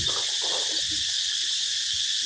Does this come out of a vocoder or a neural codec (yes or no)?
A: no